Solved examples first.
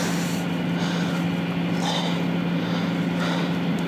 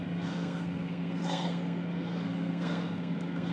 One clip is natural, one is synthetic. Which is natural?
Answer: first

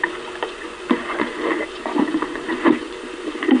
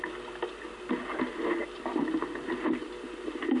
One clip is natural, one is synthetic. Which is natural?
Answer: second